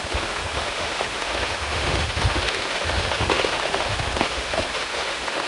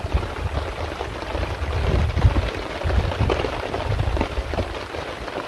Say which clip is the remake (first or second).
first